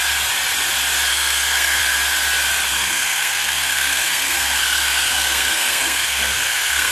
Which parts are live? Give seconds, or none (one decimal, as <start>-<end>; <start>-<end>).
0.0-1.1; 1.8-2.7